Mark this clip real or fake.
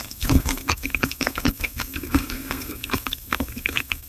fake